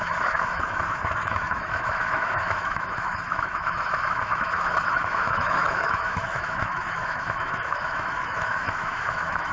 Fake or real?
fake